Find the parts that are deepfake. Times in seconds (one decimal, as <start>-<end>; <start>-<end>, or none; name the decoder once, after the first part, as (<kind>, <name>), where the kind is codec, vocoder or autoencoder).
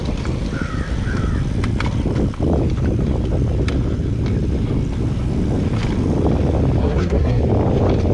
6.8-7.4 (codec, SNAC)